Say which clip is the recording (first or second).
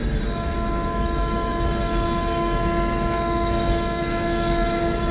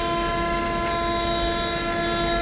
second